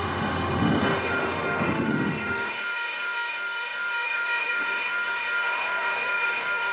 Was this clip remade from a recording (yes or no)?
yes